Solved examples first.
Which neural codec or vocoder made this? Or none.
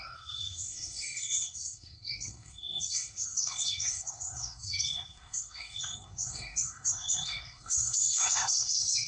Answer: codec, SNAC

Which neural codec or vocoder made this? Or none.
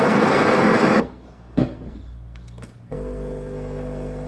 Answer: codec, SNAC